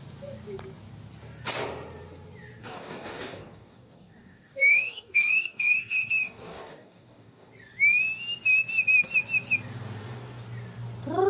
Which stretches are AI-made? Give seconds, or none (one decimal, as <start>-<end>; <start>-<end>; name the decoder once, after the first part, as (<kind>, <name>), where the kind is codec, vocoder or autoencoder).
2.6-7.5 (codec, DAC)